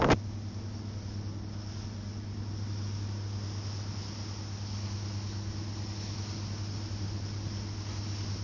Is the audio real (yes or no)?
yes